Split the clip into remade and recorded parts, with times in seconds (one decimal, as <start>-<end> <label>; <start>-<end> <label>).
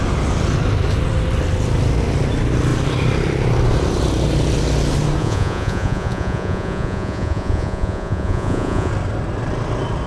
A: 0.0-5.2 recorded; 5.2-8.9 remade; 8.9-10.1 recorded